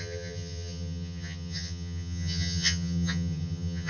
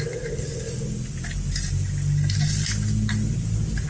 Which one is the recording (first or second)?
second